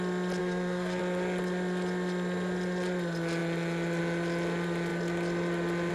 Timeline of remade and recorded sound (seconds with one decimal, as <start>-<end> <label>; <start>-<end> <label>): 0.0-0.4 recorded; 0.4-1.0 remade; 1.0-5.9 recorded

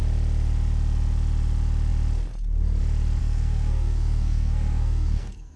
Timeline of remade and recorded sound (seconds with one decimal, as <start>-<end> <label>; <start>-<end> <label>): 0.0-3.2 recorded; 3.2-5.6 remade

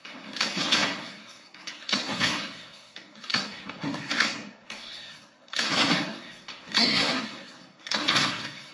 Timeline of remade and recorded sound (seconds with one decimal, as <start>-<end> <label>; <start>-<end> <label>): 0.0-8.7 remade

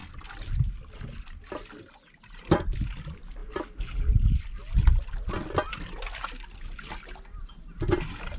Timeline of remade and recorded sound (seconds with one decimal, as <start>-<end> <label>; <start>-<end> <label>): 0.0-8.4 recorded

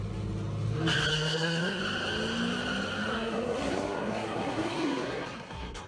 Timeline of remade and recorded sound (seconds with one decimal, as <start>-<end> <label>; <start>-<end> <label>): 0.0-1.1 recorded; 1.1-1.8 remade; 1.8-3.1 recorded; 3.1-5.9 remade

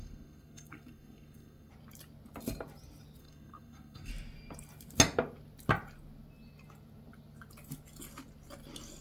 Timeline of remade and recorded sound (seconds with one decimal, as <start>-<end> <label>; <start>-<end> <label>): 0.0-1.7 remade; 1.7-3.2 recorded; 3.2-4.1 remade; 4.1-9.0 recorded